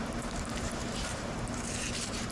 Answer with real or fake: fake